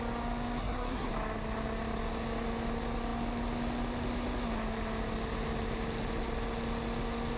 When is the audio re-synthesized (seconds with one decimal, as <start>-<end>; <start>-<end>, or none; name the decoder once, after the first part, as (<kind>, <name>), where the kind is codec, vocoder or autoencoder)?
0.6-1.1 (codec, SNAC)